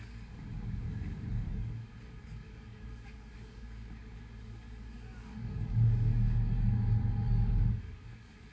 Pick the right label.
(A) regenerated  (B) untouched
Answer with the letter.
A